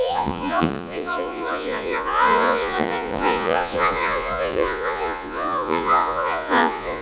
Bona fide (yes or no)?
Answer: no